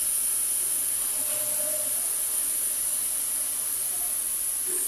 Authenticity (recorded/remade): recorded